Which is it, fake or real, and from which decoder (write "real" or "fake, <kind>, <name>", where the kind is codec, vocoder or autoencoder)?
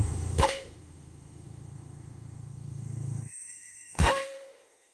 fake, autoencoder, DAC-VAE